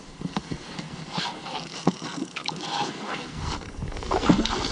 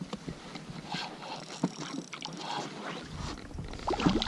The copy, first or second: first